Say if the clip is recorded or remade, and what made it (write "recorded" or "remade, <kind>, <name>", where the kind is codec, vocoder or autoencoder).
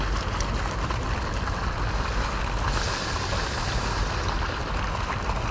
recorded